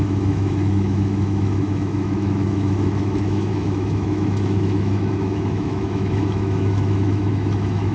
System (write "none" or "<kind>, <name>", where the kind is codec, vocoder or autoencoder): autoencoder, DAC-VAE